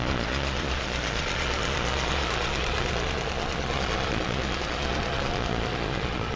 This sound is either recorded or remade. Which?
remade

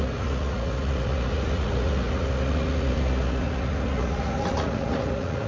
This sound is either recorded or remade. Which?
remade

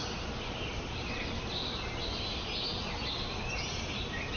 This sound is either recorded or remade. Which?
recorded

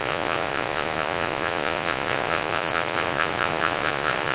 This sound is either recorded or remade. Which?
remade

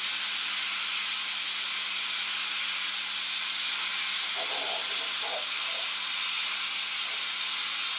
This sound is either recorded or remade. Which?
recorded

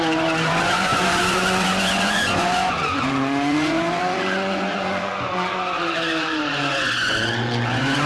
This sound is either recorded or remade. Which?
remade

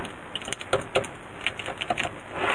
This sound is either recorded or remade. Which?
recorded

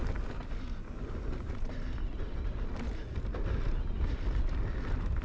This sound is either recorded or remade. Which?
recorded